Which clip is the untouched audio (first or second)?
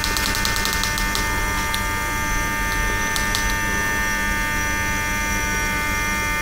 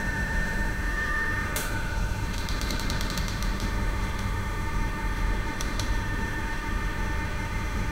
first